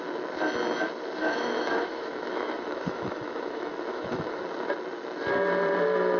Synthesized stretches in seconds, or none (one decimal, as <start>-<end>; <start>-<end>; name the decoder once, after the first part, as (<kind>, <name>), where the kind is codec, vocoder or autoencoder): 1.2-4.4 (autoencoder, DAC-VAE)